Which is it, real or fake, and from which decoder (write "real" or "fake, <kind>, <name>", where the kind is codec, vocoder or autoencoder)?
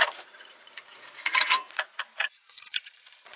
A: fake, vocoder, Vocos